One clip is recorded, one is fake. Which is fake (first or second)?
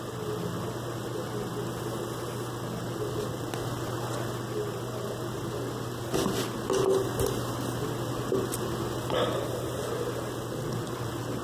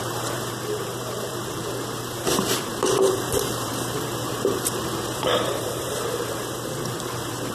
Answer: second